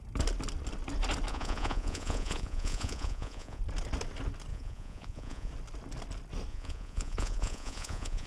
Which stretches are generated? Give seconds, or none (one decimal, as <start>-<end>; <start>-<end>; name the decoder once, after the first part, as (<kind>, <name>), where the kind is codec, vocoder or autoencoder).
1.3-3.6 (vocoder, Vocos); 4.5-5.5; 6.5-8.3